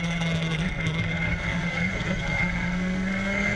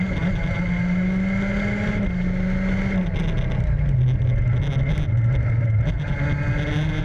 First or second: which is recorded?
second